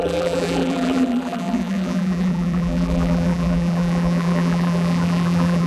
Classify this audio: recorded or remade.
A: remade